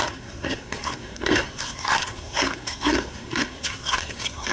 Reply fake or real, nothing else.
fake